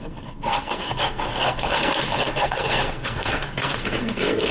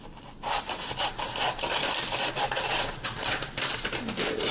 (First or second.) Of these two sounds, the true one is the second